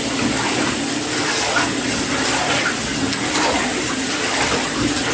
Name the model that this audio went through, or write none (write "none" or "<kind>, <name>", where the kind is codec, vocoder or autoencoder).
none